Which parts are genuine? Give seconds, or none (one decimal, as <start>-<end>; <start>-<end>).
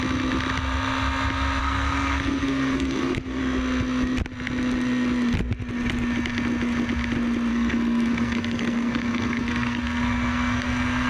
0.0-1.6; 3.4-7.5